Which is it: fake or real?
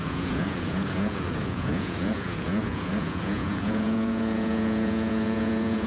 fake